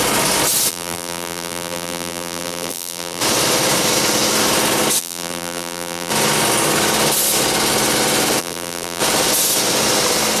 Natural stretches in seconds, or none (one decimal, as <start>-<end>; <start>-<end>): 0.0-0.7; 3.2-5.0; 6.1-8.4; 9.0-10.4